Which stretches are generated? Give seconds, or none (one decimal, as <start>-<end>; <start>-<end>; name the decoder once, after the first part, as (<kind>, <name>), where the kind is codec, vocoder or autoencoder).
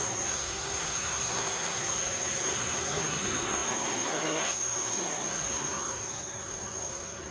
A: 0.0-7.3 (codec, SNAC)